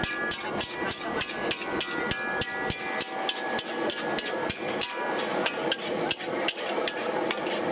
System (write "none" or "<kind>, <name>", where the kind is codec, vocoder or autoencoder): none